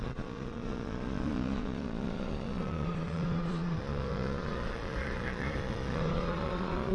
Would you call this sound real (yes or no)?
no